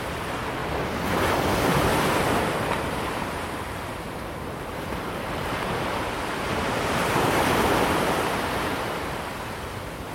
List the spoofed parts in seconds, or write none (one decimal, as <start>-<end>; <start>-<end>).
0.0-0.6; 2.4-10.1